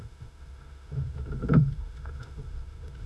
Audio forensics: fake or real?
fake